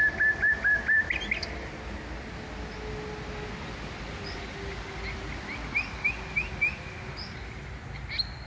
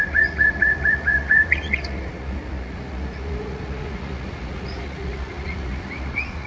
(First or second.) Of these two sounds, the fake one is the second